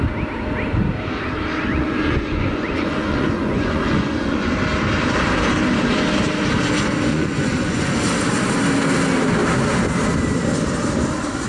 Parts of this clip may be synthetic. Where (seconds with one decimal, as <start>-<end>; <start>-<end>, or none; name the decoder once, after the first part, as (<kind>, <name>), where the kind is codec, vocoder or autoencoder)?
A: 1.7-4.5 (vocoder, Vocos); 7.1-7.9